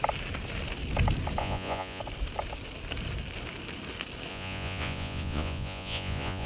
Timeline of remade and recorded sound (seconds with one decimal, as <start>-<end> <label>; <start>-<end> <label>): 0.0-1.4 recorded; 1.4-2.0 remade; 2.0-4.3 recorded; 4.3-6.5 remade